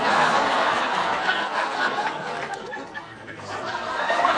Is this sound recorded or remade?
remade